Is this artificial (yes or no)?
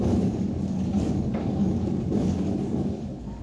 yes